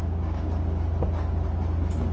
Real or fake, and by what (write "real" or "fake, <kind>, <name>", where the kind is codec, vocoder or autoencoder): real